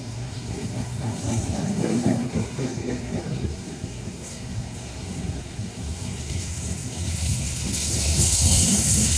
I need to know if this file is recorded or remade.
remade